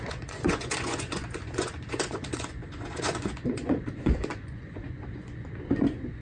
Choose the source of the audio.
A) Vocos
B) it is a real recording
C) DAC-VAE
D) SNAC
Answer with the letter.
A